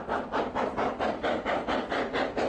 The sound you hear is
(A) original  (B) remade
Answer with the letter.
A